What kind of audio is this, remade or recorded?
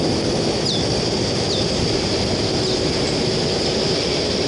recorded